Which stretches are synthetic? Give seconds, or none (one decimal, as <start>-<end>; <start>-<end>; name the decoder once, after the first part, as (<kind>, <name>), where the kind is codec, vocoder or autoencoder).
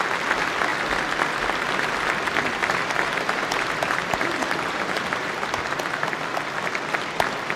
2.6-5.6 (vocoder, BigVGAN v2)